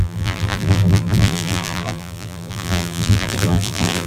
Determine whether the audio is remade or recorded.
remade